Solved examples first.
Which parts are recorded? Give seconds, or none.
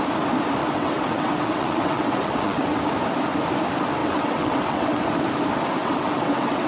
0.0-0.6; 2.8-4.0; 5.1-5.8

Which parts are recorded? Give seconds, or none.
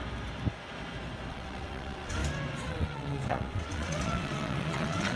0.0-1.3; 2.2-2.7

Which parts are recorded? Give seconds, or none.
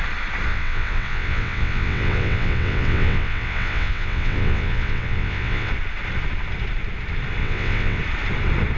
0.0-0.5; 5.7-7.4; 8.0-8.8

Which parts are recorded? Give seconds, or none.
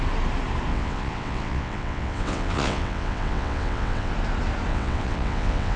0.0-0.7; 4.1-4.7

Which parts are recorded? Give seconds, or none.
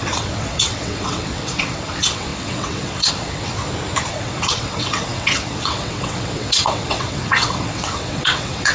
3.6-4.1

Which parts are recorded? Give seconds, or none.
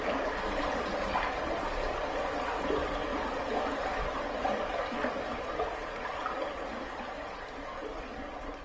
0.0-8.6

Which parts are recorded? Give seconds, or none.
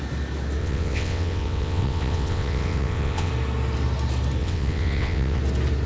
0.0-0.6; 3.3-4.4; 5.4-5.9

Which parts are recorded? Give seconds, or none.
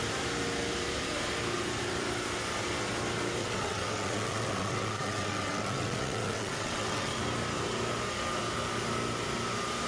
0.0-3.4; 7.2-9.9